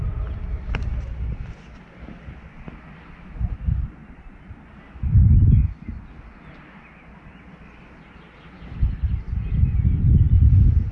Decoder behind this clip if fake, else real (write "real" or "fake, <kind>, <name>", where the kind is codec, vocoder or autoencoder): real